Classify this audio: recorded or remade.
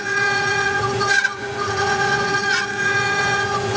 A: remade